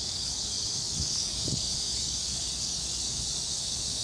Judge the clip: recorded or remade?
remade